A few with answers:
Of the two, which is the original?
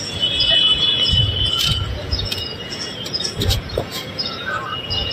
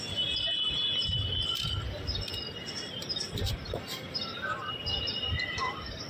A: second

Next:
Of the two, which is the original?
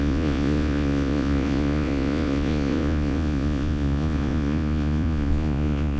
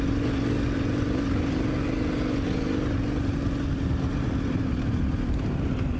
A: second